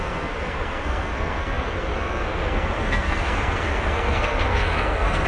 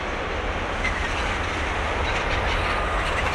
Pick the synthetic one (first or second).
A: first